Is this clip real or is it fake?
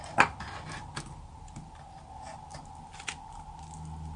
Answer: real